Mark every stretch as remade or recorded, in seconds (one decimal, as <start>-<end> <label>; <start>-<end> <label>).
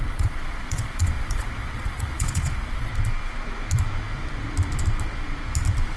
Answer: 0.0-2.9 remade; 2.9-6.0 recorded